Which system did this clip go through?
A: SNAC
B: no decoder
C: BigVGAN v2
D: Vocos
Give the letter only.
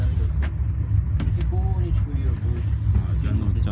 B